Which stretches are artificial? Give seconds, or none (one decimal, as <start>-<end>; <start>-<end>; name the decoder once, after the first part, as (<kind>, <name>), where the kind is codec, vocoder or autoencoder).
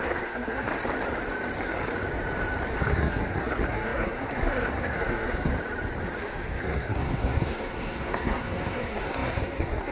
0.0-0.7 (codec, SNAC); 2.8-5.5; 6.6-9.9